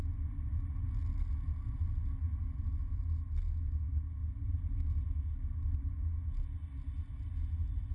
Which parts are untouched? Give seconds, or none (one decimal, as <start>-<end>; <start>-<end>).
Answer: 0.0-7.9

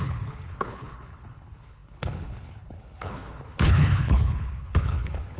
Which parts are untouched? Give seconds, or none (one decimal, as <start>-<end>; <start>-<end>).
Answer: none